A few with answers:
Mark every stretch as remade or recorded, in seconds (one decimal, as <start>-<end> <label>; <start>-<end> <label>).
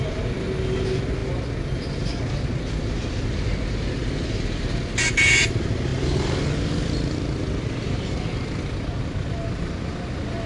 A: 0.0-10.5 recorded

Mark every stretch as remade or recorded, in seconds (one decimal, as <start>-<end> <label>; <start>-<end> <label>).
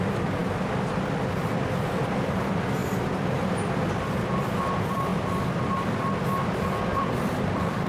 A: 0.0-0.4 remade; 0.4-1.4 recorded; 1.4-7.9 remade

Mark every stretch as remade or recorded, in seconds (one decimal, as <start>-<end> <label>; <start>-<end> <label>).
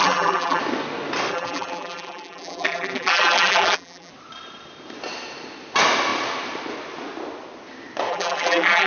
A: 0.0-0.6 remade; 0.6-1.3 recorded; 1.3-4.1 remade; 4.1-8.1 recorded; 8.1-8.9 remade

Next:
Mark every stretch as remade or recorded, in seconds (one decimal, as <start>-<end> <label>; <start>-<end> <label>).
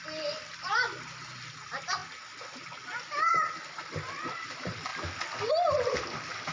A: 0.0-2.0 remade; 2.0-3.5 recorded; 3.5-4.9 remade; 4.9-5.5 recorded; 5.5-6.5 remade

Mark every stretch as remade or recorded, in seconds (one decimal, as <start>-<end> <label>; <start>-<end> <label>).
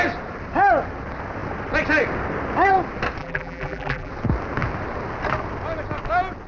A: 0.0-3.2 recorded; 3.2-4.1 remade; 4.1-6.5 recorded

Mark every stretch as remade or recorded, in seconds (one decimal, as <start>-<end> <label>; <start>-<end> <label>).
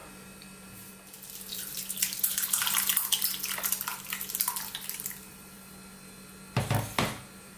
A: 0.0-3.9 recorded; 3.9-5.7 remade; 5.7-7.6 recorded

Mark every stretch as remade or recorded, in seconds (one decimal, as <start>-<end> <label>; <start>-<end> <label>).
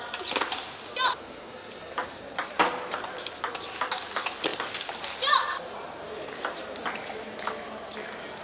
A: 0.0-4.5 recorded; 4.5-5.0 remade; 5.0-8.4 recorded